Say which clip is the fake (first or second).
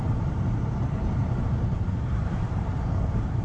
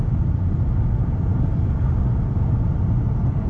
first